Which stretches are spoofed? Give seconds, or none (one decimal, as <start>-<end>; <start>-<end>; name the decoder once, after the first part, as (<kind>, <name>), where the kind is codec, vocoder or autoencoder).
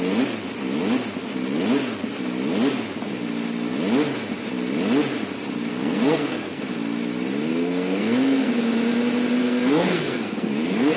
5.7-6.6 (codec, SNAC); 7.5-8.5; 9.4-11.0